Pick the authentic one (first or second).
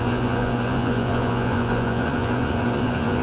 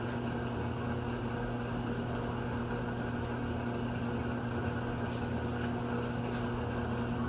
second